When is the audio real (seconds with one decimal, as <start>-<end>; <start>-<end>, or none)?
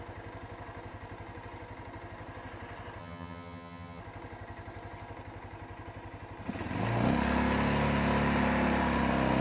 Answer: 0.0-3.0; 4.0-9.4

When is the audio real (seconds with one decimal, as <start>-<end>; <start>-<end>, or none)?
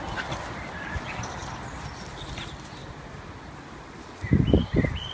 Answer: 0.0-5.1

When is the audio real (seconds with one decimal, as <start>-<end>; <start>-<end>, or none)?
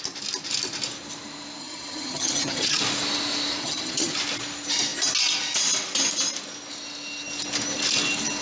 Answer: 0.0-1.6; 2.8-3.6; 4.1-8.4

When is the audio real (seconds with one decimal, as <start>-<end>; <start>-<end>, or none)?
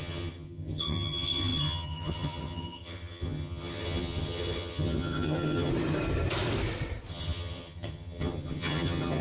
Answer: 5.7-7.1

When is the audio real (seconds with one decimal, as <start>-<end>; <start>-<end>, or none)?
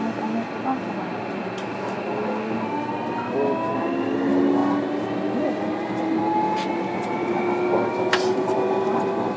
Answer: 0.0-9.4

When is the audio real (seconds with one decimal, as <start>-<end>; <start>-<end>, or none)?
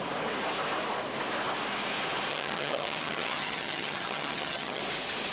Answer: 0.0-2.3; 4.8-5.3